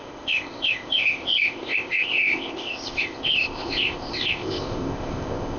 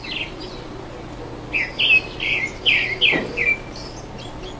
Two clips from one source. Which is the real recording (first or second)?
second